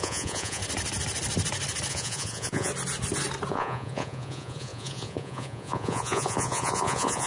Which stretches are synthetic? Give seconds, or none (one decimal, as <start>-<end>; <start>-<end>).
0.0-0.6; 1.9-2.7; 3.5-7.3